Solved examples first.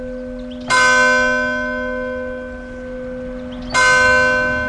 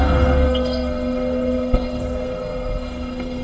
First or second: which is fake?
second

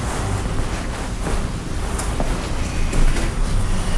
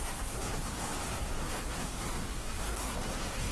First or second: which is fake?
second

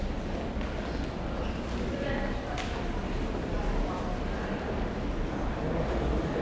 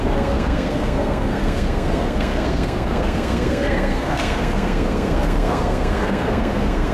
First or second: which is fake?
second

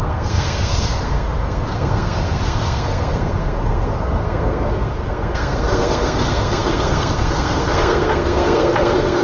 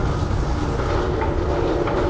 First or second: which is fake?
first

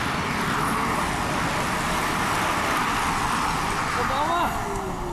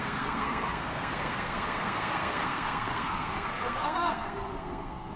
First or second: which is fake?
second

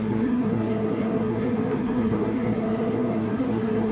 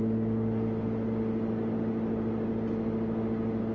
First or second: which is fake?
first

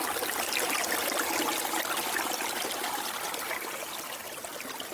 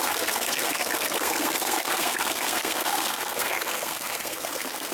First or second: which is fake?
second